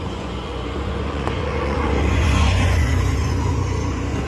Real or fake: fake